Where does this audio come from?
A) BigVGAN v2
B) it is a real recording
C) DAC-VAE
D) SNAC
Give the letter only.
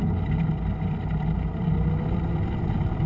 B